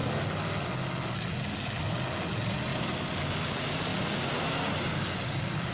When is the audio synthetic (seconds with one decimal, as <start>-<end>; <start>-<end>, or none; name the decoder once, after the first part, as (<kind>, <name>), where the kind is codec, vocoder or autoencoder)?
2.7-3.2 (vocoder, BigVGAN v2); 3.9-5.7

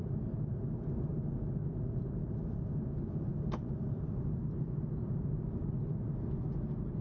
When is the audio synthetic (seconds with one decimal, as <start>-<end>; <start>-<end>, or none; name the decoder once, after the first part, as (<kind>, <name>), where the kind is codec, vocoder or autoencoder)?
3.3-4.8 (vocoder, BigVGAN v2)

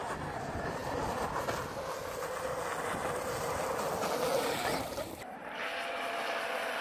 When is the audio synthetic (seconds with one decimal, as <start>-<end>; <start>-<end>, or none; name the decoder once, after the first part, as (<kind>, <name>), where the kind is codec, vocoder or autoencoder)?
none